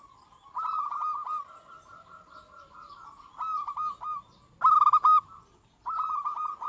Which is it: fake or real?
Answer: real